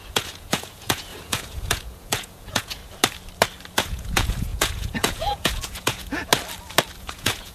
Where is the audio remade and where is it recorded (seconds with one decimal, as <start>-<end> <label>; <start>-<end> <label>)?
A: 0.0-2.8 remade; 2.8-3.7 recorded; 3.7-6.3 remade; 6.3-7.0 recorded; 7.0-7.5 remade